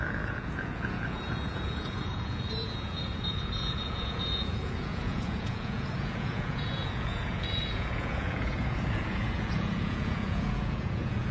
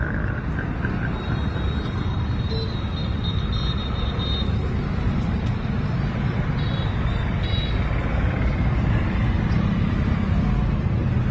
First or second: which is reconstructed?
first